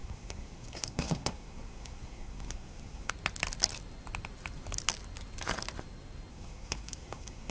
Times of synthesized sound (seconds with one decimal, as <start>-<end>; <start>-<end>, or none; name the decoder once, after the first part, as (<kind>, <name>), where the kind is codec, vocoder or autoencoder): 0.0-3.1 (codec, SNAC); 6.3-7.5